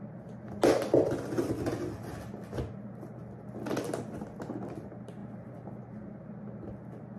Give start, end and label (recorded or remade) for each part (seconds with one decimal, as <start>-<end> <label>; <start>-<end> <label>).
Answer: 0.0-7.2 recorded